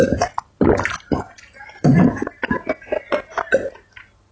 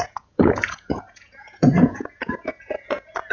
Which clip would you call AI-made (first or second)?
second